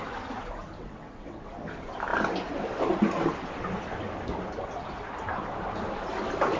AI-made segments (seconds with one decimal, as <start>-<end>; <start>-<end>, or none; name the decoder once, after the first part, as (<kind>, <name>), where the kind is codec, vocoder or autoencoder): 0.8-1.5 (vocoder, WaveNeXt)